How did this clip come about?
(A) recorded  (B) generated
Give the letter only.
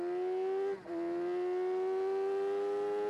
A